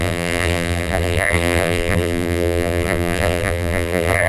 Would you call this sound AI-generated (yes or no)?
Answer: yes